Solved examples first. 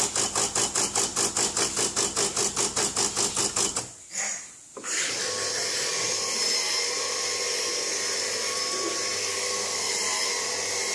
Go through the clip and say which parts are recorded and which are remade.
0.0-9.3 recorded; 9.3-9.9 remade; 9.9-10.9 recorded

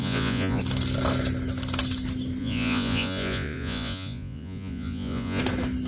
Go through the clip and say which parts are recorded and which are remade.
0.0-0.6 remade; 0.6-2.4 recorded; 2.4-5.4 remade; 5.4-5.9 recorded